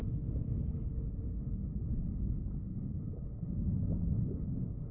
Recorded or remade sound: recorded